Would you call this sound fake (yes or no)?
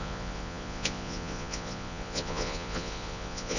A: yes